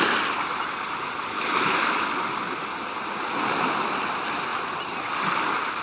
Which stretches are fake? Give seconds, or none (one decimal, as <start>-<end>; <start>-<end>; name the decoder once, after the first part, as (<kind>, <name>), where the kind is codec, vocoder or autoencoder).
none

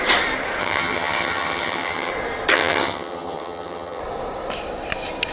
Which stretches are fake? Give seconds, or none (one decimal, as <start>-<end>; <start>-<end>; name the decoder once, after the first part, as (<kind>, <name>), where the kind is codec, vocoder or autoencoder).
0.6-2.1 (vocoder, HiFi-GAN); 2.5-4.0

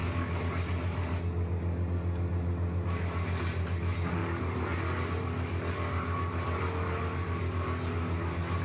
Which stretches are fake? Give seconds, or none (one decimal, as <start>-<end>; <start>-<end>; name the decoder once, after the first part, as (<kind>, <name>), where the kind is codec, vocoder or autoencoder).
none

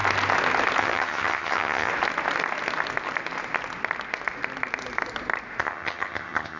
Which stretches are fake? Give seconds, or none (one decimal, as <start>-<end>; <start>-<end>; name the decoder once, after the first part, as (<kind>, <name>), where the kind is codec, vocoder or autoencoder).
0.8-1.9 (vocoder, HiFi-GAN); 5.6-6.6

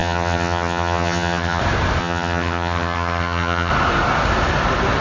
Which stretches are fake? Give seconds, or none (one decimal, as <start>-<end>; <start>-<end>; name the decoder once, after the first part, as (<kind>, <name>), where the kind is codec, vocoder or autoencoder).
0.0-1.6 (vocoder, HiFi-GAN); 2.0-3.7

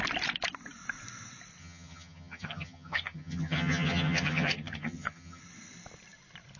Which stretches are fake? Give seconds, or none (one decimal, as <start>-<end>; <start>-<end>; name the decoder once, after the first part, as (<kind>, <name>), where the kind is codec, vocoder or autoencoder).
1.6-5.4 (vocoder, HiFi-GAN)

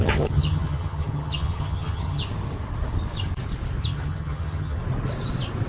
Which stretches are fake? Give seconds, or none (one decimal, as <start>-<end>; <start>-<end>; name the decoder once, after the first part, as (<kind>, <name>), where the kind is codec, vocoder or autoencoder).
0.0-2.2 (vocoder, HiFi-GAN); 3.8-4.8

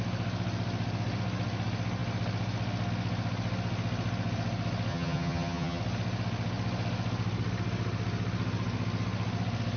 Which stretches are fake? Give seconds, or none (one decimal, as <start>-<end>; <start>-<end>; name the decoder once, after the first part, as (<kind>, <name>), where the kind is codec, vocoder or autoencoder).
4.9-5.8 (vocoder, HiFi-GAN)